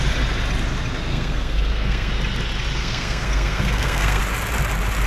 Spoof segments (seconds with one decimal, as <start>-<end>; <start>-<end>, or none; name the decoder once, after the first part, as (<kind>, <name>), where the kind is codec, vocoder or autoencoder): 1.1-2.1 (codec, SNAC); 2.8-4.2